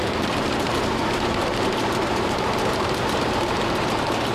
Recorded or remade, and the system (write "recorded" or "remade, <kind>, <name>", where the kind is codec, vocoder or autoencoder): remade, vocoder, BigVGAN v2